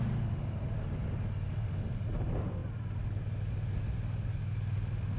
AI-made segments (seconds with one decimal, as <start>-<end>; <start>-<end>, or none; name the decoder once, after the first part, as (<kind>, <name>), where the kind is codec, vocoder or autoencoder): none